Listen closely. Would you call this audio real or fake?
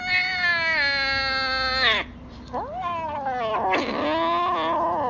real